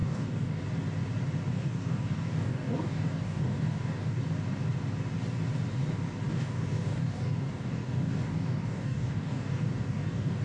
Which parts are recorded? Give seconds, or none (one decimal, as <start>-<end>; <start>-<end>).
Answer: 0.6-1.5; 4.2-6.3